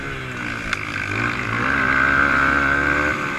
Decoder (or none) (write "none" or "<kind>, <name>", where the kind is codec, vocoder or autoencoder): none